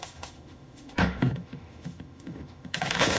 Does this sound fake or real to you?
fake